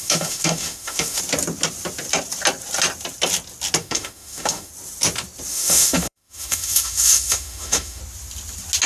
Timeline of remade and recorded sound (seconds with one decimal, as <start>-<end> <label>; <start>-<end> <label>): 0.0-1.2 remade; 1.2-3.8 recorded; 3.8-4.7 remade; 4.7-5.5 recorded; 5.5-8.0 remade; 8.0-8.9 recorded